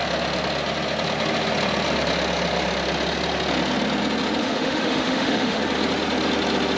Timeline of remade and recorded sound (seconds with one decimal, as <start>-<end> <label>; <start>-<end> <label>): 0.0-4.4 recorded; 4.4-5.6 remade; 5.6-6.8 recorded